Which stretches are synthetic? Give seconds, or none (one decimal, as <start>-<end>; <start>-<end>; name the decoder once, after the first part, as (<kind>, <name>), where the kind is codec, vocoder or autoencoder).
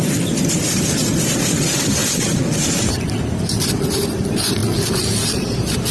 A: 0.0-2.0 (vocoder, BigVGAN v2); 2.7-4.6